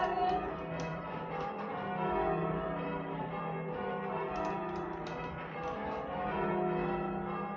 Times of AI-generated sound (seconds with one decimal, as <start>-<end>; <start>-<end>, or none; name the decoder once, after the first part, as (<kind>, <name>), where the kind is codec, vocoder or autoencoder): 0.9-1.7 (vocoder, BigVGAN v2); 2.4-3.4